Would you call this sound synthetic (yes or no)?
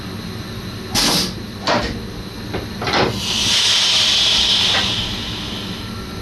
no